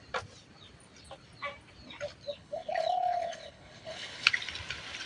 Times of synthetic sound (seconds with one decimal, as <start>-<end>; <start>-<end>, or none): 2.3-4.3